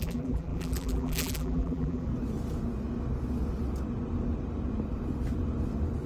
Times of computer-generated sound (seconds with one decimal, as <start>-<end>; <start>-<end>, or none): 0.0-2.1